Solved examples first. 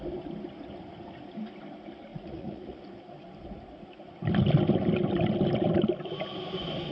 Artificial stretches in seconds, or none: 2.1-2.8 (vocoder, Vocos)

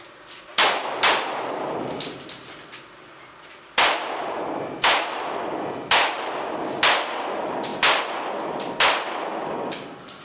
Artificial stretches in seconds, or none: none

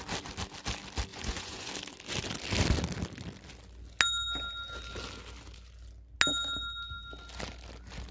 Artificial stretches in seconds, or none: 1.1-1.7 (vocoder, Vocos)

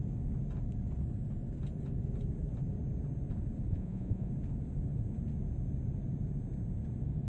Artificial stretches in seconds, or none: 3.7-4.3 (vocoder, Vocos)

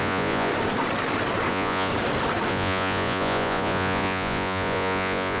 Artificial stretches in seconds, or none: 0.0-0.5 (vocoder, Vocos); 1.5-1.9; 2.5-5.4

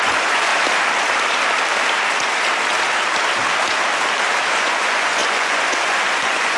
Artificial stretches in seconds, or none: 0.0-0.5 (vocoder, Vocos); 4.5-6.6

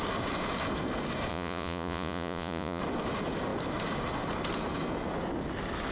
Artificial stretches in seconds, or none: 1.3-2.8 (vocoder, Vocos)